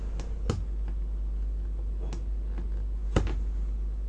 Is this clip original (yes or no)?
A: yes